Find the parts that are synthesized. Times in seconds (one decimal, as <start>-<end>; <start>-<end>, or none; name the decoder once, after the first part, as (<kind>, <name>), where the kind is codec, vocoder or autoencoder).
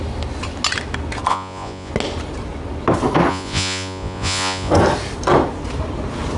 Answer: 1.3-1.9 (vocoder, Vocos); 3.3-4.7